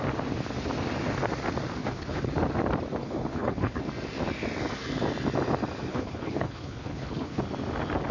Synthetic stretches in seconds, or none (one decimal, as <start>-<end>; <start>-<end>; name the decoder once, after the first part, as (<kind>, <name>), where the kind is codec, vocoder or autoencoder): 1.8-2.3 (codec, HILCodec); 3.0-3.8; 5.9-7.4